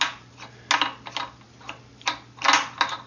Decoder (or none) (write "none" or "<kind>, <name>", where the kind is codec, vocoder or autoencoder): none